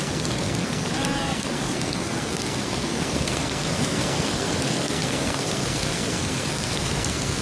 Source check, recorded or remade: remade